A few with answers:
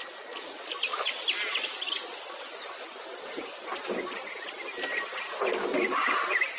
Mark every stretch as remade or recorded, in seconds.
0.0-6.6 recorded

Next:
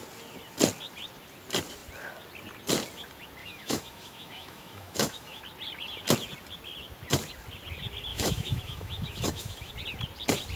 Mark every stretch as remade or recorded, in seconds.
0.0-3.4 recorded; 3.4-5.4 remade; 5.4-8.1 recorded; 8.1-9.7 remade; 9.7-10.6 recorded

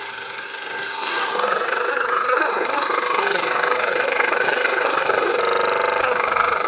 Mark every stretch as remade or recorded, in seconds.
0.0-5.4 remade; 5.4-6.0 recorded; 6.0-6.7 remade